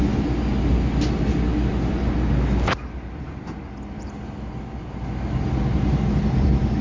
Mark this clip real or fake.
real